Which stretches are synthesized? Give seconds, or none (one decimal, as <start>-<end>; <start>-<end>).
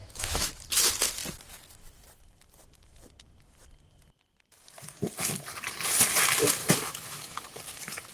0.0-0.5; 6.6-7.4